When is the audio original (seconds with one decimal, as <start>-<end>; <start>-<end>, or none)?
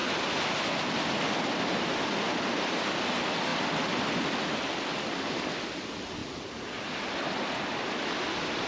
0.0-6.2; 6.8-8.7